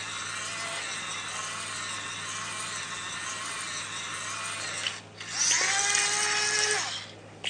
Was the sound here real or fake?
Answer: real